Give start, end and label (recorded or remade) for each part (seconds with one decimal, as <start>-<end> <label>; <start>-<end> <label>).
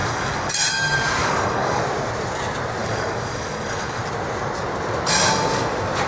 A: 0.0-0.5 remade; 0.5-1.2 recorded; 1.2-1.8 remade; 1.8-2.8 recorded; 2.8-4.0 remade; 4.0-6.1 recorded